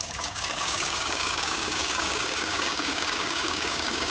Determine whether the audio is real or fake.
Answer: fake